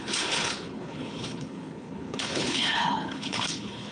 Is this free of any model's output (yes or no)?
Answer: no